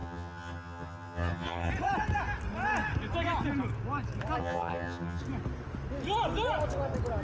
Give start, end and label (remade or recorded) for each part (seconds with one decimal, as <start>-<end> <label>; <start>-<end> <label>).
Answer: 0.0-1.7 remade; 1.7-4.4 recorded; 4.4-5.2 remade; 5.2-7.2 recorded